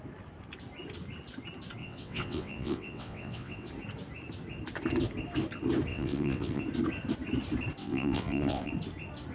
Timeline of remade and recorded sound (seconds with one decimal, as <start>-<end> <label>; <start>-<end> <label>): 0.0-1.8 recorded; 1.8-3.7 remade; 3.7-5.9 recorded; 5.9-6.6 remade; 6.6-7.8 recorded; 7.8-8.7 remade; 8.7-9.3 recorded